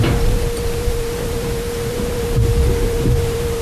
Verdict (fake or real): fake